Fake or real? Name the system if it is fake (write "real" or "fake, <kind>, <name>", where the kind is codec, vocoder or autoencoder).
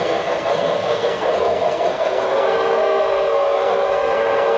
fake, codec, SNAC